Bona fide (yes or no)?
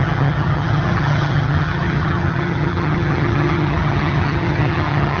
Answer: no